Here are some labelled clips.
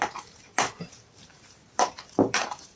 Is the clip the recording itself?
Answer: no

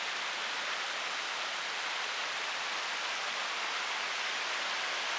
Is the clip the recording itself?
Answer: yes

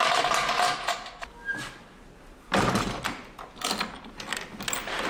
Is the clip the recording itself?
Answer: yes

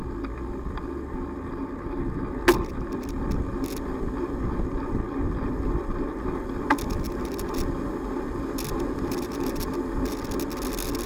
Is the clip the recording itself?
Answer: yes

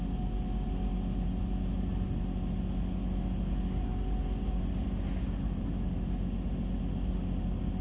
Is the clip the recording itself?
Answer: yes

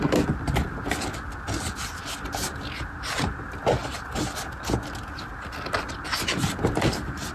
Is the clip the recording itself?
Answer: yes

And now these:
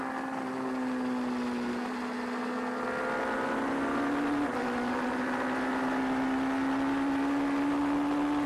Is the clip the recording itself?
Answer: yes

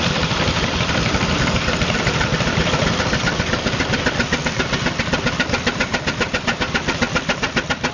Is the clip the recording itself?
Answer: no